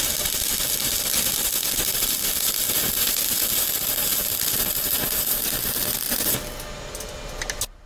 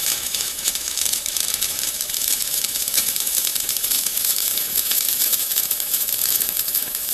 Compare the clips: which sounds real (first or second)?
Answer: first